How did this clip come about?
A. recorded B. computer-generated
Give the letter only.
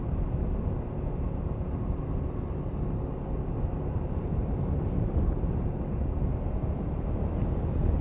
A